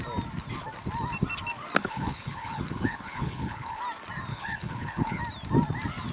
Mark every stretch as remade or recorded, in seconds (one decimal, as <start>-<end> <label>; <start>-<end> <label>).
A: 0.0-1.8 recorded; 1.8-3.8 remade; 3.8-4.3 recorded; 4.3-5.2 remade; 5.2-6.1 recorded